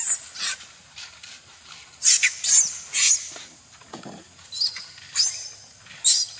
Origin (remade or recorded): recorded